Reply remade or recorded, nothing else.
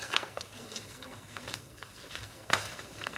remade